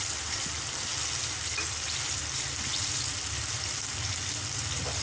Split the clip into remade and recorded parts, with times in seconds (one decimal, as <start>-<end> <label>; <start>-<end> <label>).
0.0-5.0 recorded